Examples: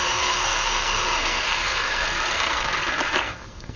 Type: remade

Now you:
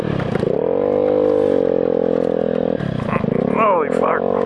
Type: recorded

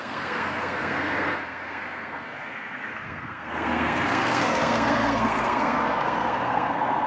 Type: remade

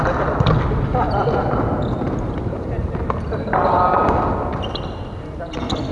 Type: recorded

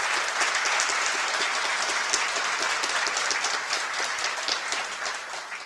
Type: recorded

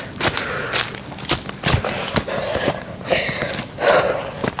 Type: recorded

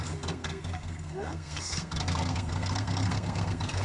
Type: remade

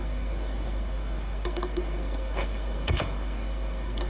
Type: remade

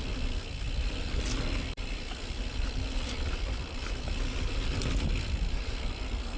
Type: recorded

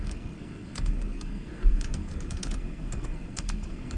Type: remade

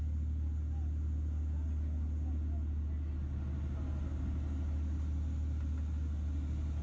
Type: recorded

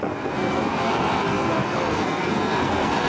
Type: remade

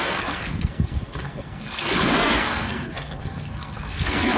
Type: remade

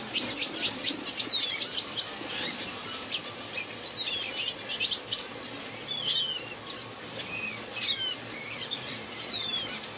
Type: recorded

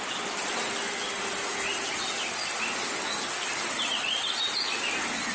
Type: recorded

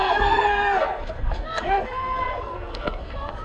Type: remade